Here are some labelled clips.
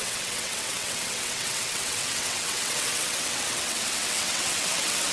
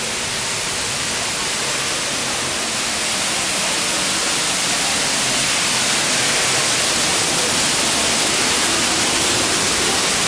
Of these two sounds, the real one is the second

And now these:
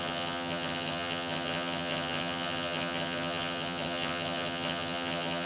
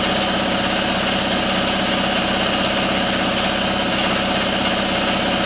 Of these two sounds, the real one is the second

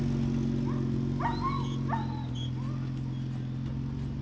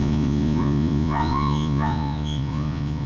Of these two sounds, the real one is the first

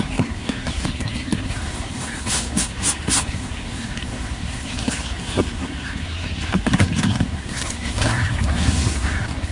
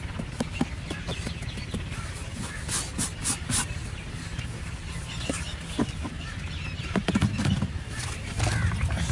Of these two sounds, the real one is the second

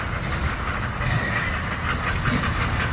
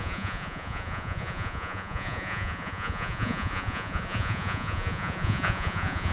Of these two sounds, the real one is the first